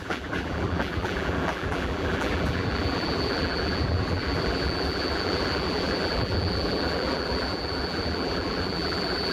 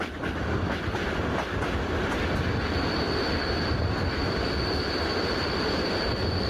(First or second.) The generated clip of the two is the first